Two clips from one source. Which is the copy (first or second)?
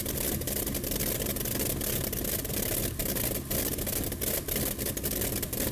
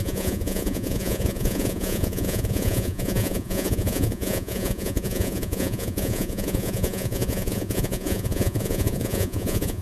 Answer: second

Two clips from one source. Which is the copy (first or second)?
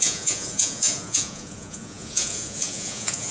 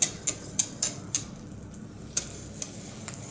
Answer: first